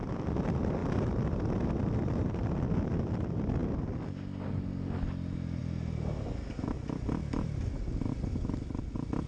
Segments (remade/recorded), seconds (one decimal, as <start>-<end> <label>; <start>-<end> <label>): 0.0-9.3 recorded